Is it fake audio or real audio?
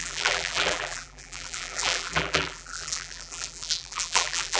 fake